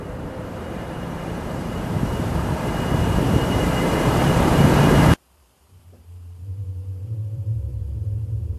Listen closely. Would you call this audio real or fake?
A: fake